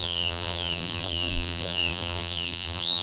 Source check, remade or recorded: remade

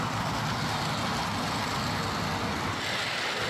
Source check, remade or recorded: recorded